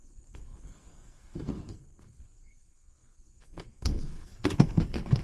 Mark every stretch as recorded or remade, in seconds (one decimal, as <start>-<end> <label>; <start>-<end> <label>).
0.0-5.2 remade